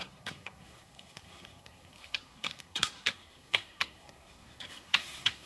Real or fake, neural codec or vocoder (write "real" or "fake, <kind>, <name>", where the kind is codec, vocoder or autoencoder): fake, codec, SNAC